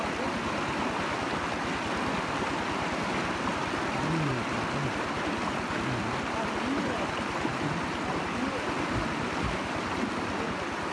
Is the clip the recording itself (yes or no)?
yes